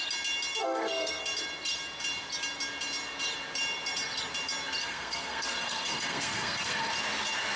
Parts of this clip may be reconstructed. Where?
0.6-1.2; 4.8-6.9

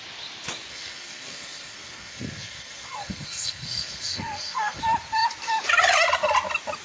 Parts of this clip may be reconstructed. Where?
0.7-4.8

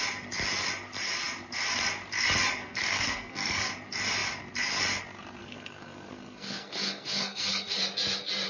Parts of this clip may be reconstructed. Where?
2.6-3.7; 5.4-7.8